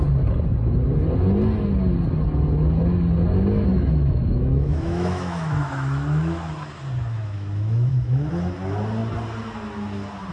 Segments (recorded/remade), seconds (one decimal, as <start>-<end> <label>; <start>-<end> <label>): 0.0-3.7 recorded; 3.7-6.5 remade; 6.5-7.1 recorded; 7.1-8.3 remade; 8.3-10.3 recorded